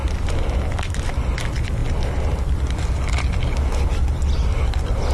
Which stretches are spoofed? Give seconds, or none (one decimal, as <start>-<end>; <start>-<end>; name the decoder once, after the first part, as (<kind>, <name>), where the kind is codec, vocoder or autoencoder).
none